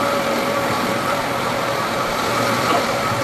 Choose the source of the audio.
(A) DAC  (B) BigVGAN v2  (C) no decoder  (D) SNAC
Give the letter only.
B